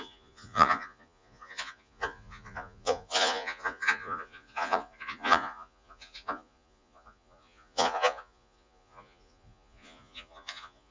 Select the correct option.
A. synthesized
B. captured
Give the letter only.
A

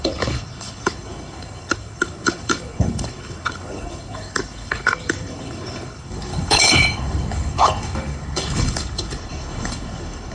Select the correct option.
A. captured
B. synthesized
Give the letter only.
B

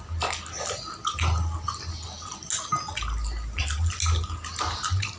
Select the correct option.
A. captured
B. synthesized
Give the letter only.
A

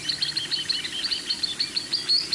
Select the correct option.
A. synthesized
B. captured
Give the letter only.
B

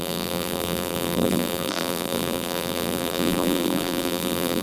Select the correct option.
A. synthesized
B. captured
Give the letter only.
A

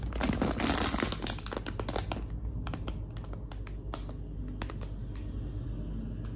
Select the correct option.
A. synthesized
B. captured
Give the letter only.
B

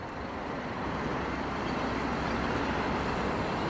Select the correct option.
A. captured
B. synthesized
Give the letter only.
A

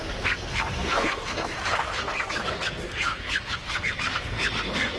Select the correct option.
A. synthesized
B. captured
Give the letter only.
A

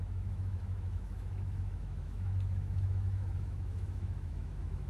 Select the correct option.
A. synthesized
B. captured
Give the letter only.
A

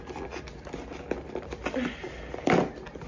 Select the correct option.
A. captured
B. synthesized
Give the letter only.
A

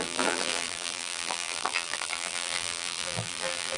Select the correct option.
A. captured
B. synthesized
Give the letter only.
B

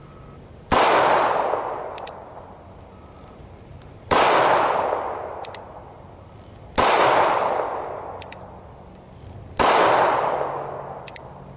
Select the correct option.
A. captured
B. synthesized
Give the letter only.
A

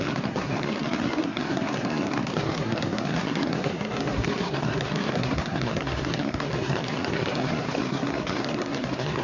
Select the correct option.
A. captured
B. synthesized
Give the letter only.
B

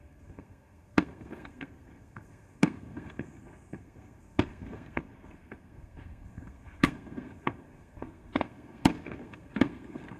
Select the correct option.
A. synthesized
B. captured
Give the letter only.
A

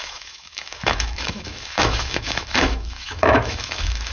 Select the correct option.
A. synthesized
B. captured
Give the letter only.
A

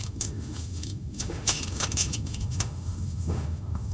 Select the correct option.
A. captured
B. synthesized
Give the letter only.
B